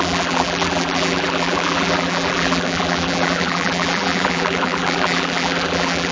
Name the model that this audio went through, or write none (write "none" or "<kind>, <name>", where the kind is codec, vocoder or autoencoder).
vocoder, BigVGAN v2